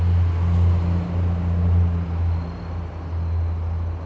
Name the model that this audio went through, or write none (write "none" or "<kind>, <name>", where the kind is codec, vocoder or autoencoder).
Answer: none